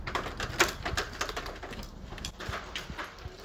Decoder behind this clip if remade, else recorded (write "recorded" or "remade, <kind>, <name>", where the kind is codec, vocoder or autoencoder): recorded